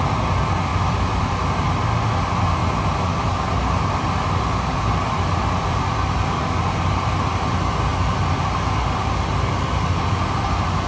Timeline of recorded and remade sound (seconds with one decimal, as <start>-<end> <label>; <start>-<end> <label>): 0.0-10.9 recorded